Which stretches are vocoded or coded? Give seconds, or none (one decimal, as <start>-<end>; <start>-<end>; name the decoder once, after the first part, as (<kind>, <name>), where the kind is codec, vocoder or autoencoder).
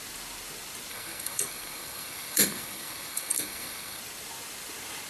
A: 0.9-4.0 (codec, SNAC)